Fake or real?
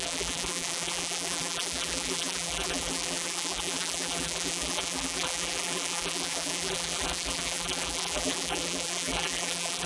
fake